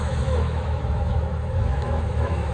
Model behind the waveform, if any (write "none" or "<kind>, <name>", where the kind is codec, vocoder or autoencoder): autoencoder, DAC-VAE